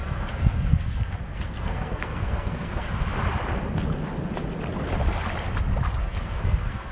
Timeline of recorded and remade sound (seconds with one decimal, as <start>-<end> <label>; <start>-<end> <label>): 0.0-2.9 remade; 2.9-6.0 recorded; 6.0-6.9 remade